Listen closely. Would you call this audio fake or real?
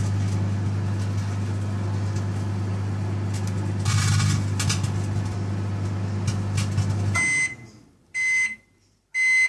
real